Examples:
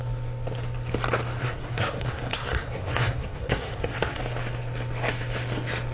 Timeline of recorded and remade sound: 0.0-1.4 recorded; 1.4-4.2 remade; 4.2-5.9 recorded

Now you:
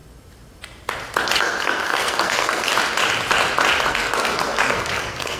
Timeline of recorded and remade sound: 0.0-1.4 recorded; 1.4-2.7 remade; 2.7-3.9 recorded; 3.9-5.4 remade